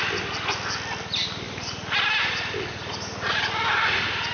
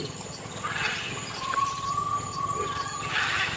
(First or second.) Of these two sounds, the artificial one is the second